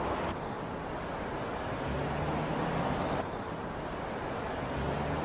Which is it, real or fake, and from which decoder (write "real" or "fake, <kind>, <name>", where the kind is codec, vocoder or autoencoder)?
real